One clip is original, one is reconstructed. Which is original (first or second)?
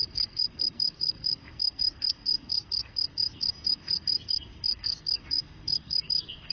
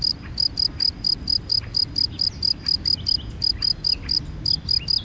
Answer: second